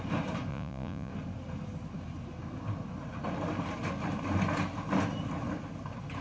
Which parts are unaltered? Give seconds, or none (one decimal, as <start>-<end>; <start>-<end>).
0.0-0.5; 1.1-6.2